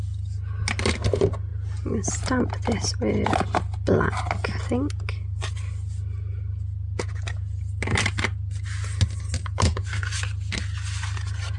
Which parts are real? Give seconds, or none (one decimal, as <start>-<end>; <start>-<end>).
0.0-11.6